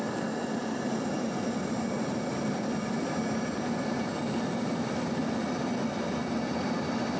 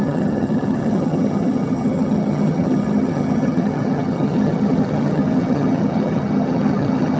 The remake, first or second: second